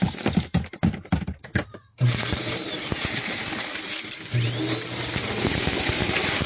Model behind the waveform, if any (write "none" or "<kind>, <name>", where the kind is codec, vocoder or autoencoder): vocoder, BigVGAN v2